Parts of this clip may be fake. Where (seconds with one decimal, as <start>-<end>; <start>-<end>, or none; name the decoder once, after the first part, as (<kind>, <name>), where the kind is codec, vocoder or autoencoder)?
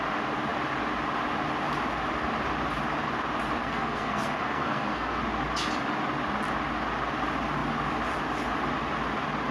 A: 3.6-5.2 (codec, SNAC)